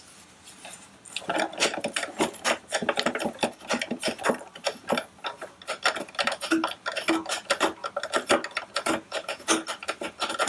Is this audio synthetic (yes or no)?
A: no